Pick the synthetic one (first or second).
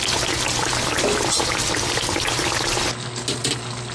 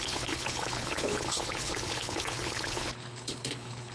second